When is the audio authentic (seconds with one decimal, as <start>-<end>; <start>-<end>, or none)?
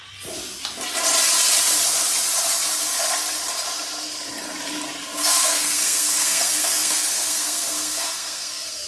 0.0-5.0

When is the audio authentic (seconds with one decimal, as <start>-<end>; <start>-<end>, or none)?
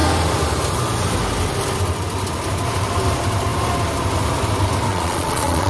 0.0-4.9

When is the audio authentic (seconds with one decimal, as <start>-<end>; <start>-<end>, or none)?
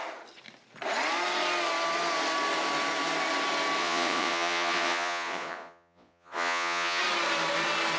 0.0-3.8; 7.0-8.0